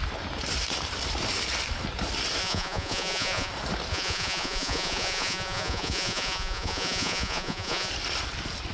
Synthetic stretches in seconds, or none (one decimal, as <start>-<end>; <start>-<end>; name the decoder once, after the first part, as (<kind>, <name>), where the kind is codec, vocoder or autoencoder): 2.4-3.5 (vocoder, Vocos); 3.9-7.9